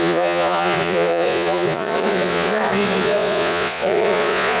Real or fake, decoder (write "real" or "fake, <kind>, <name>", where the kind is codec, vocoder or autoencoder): fake, vocoder, Vocos